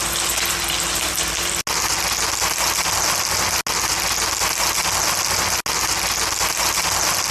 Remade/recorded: recorded